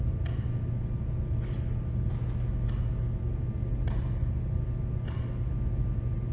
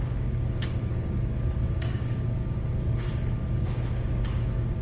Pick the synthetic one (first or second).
second